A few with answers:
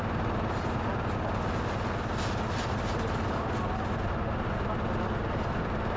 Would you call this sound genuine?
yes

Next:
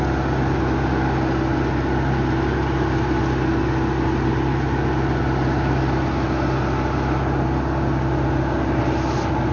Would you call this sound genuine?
yes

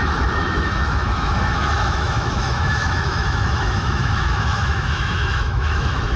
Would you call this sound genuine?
no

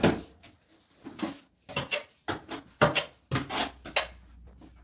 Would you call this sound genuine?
yes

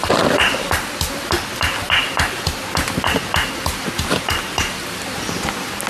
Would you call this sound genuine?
yes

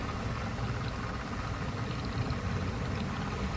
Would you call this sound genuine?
yes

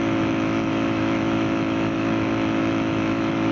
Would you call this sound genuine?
no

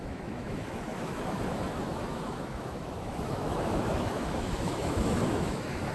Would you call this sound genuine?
no